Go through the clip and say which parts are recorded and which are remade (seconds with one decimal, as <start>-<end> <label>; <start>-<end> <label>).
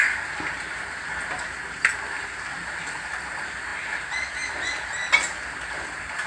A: 0.0-6.3 recorded